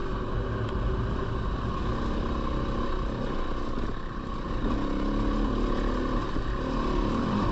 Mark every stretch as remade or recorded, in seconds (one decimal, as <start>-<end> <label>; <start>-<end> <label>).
0.0-7.5 recorded